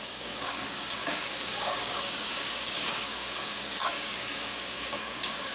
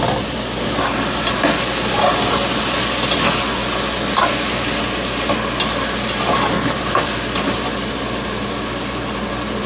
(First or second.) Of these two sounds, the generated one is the first